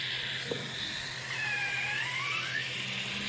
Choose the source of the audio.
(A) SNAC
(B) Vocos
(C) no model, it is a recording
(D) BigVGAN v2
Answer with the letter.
C